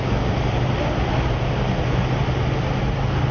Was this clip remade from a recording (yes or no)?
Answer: no